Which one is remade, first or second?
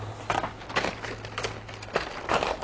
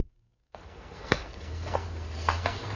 second